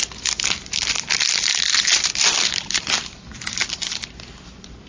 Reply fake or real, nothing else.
real